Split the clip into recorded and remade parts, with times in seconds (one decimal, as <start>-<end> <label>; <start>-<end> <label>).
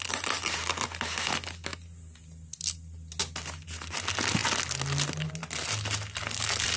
0.0-6.8 recorded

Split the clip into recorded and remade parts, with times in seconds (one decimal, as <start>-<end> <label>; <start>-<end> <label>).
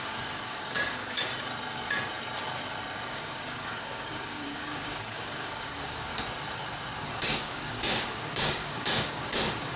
0.0-1.3 remade; 1.3-3.1 recorded; 3.1-6.1 remade; 6.1-7.0 recorded; 7.0-9.8 remade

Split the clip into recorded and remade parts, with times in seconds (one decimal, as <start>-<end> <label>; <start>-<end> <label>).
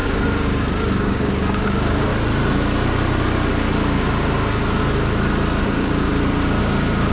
0.0-2.1 remade; 2.1-5.6 recorded; 5.6-6.1 remade; 6.1-6.6 recorded; 6.6-7.1 remade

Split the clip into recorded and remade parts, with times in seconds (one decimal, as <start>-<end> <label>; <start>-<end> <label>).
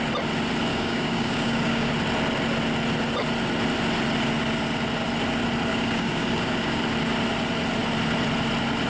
0.0-0.7 recorded; 0.7-1.9 remade; 1.9-5.7 recorded; 5.7-6.8 remade; 6.8-8.9 recorded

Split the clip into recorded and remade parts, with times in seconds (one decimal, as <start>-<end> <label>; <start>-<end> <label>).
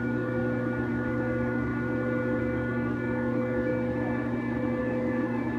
0.0-0.4 remade; 0.4-0.9 recorded; 0.9-1.7 remade; 1.7-2.4 recorded; 2.4-3.7 remade; 3.7-4.8 recorded; 4.8-5.6 remade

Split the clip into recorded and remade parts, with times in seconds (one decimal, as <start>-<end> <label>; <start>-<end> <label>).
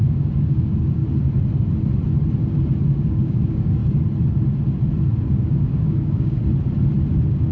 0.0-1.0 remade; 1.0-3.0 recorded; 3.0-3.8 remade; 3.8-5.3 recorded; 5.3-6.4 remade; 6.4-7.1 recorded; 7.1-7.5 remade